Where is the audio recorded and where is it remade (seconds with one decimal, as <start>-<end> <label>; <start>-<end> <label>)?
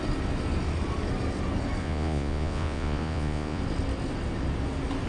0.0-1.8 recorded; 1.8-3.6 remade; 3.6-5.1 recorded